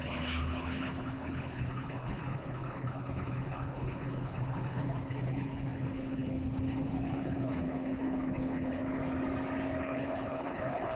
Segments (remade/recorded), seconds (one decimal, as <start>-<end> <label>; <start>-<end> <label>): 0.0-9.0 remade; 9.0-9.8 recorded; 9.8-11.0 remade